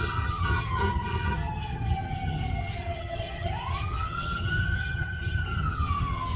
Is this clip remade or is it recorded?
remade